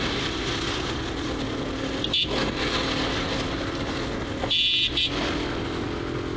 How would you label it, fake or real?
real